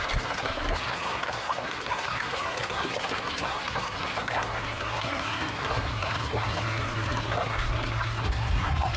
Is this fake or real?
fake